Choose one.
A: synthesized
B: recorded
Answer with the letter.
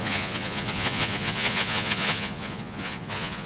A